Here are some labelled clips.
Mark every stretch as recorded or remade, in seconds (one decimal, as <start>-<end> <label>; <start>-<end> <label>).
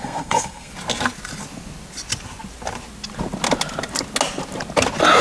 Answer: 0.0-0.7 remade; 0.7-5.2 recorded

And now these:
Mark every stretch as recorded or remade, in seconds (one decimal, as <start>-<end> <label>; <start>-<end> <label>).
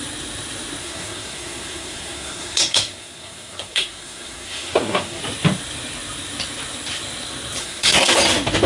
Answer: 0.0-0.8 recorded; 0.8-5.2 remade; 5.2-7.6 recorded; 7.6-8.2 remade; 8.2-8.7 recorded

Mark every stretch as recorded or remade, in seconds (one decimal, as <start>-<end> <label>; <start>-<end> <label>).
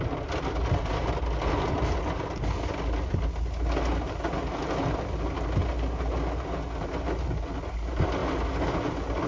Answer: 0.0-9.3 recorded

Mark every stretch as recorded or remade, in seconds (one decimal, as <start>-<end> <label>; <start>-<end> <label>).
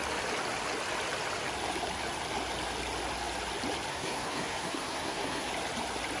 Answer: 0.0-3.9 recorded; 3.9-5.5 remade; 5.5-6.2 recorded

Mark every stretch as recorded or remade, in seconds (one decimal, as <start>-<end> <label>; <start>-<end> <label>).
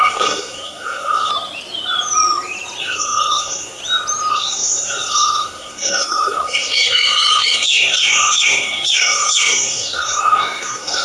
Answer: 0.0-1.3 remade; 1.3-2.8 recorded; 2.8-3.8 remade; 3.8-4.3 recorded; 4.3-11.0 remade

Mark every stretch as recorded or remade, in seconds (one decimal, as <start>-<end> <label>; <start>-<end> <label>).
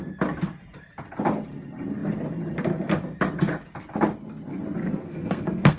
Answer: 0.0-4.8 recorded; 4.8-5.8 remade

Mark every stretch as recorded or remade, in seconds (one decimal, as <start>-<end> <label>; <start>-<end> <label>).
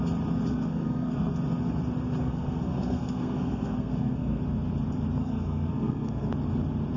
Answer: 0.0-0.5 recorded; 0.5-1.3 remade; 1.3-2.2 recorded; 2.2-4.4 remade; 4.4-5.2 recorded; 5.2-6.3 remade; 6.3-7.0 recorded